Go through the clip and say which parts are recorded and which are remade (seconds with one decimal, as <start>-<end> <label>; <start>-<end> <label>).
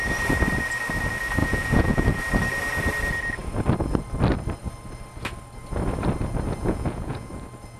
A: 0.0-1.4 recorded; 1.4-2.2 remade; 2.2-6.6 recorded; 6.6-7.3 remade; 7.3-7.8 recorded